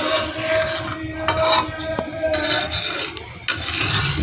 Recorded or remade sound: recorded